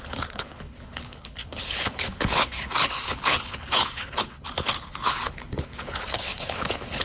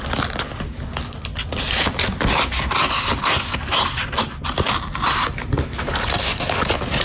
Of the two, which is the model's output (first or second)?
first